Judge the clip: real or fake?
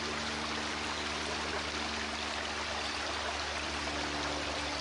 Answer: real